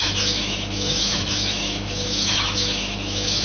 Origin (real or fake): fake